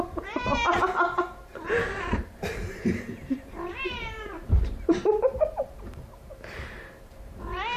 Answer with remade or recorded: remade